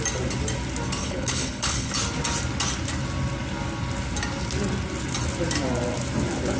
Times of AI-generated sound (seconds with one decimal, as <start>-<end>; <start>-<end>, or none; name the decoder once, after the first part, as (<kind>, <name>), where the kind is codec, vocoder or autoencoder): 1.0-1.9 (codec, HILCodec)